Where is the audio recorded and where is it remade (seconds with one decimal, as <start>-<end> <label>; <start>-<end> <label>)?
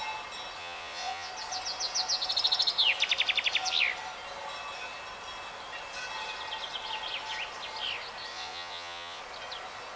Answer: 0.0-0.6 recorded; 0.6-1.3 remade; 1.3-8.3 recorded; 8.3-9.2 remade; 9.2-10.0 recorded